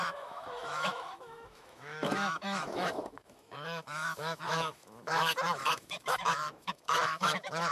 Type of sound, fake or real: fake